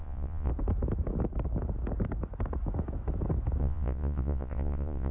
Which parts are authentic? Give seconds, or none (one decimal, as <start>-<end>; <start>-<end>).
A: 0.5-3.6